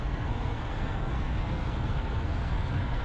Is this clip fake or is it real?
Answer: fake